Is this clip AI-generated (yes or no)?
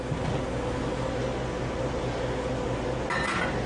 no